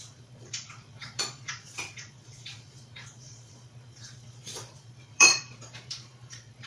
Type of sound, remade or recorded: remade